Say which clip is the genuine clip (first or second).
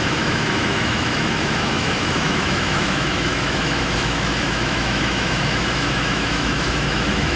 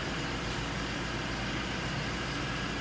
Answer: second